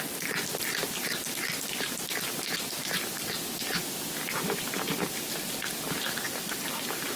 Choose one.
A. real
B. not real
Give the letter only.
A